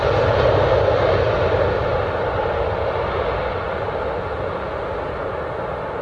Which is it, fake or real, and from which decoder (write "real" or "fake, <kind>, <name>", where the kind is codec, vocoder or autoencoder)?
real